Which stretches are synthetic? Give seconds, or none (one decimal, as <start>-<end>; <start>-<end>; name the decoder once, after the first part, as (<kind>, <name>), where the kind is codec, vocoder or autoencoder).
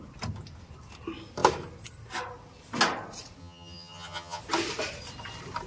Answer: 3.4-4.4 (vocoder, HiFi-GAN)